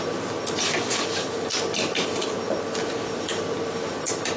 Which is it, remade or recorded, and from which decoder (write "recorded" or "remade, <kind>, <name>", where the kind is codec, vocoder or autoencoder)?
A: recorded